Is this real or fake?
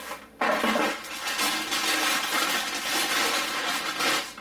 real